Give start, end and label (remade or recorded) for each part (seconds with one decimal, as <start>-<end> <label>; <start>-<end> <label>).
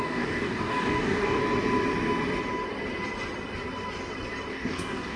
0.0-1.4 remade; 1.4-4.5 recorded; 4.5-5.2 remade